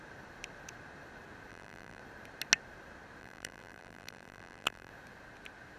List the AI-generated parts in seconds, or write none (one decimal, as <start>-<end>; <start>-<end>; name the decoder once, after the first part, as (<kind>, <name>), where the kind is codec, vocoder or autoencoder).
1.5-2.0 (vocoder, BigVGAN v2); 3.2-4.9